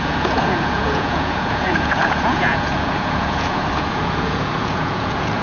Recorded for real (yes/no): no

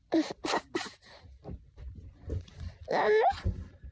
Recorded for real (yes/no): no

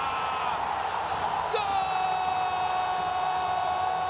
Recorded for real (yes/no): yes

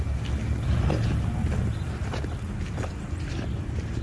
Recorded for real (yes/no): yes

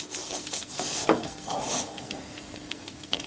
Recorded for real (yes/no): no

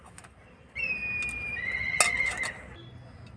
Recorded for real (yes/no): yes